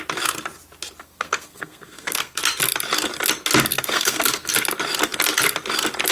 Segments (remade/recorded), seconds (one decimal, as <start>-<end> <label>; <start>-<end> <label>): 0.0-1.0 recorded; 1.0-2.4 remade; 2.4-3.7 recorded; 3.7-4.5 remade; 4.5-6.1 recorded